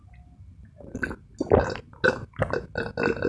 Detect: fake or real real